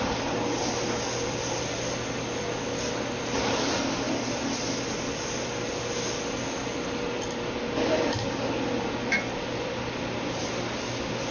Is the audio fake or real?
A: real